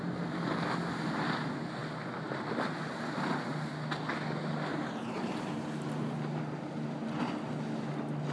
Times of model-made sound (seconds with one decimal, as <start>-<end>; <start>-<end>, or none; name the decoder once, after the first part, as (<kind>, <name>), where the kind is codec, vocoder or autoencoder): 4.7-6.4 (vocoder, BigVGAN v2)

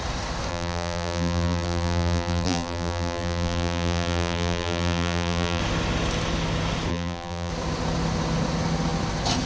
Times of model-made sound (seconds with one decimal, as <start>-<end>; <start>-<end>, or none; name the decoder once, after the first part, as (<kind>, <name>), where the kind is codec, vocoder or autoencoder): 0.5-5.6 (vocoder, BigVGAN v2); 6.9-7.5

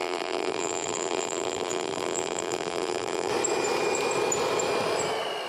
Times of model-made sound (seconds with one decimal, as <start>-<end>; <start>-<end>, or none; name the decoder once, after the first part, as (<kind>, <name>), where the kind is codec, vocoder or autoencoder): 0.0-3.3 (vocoder, BigVGAN v2)